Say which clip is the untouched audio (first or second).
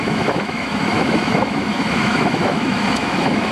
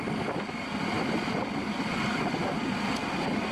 second